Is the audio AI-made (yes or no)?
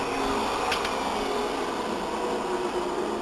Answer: no